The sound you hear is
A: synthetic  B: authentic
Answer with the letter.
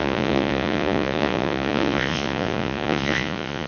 A